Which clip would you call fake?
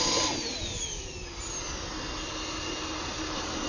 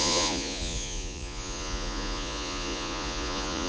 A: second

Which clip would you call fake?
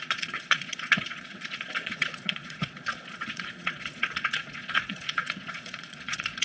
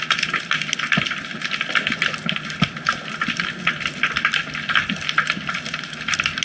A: first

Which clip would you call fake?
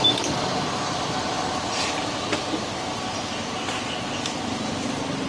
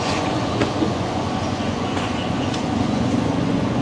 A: second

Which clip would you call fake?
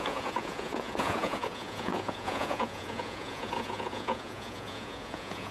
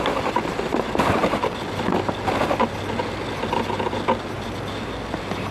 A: first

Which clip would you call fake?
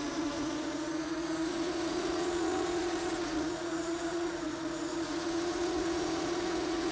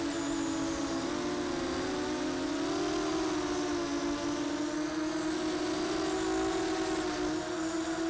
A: first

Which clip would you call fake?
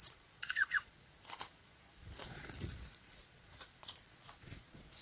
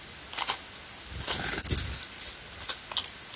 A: first